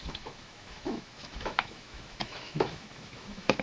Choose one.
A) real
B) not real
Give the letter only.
B